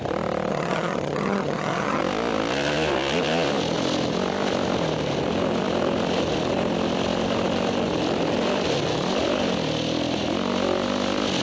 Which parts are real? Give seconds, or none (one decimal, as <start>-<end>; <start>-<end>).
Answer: 0.0-0.5; 2.0-11.4